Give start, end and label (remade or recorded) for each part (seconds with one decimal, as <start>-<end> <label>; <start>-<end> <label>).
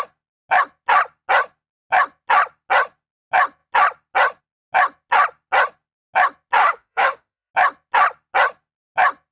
0.0-6.6 recorded; 6.6-7.5 remade; 7.5-9.3 recorded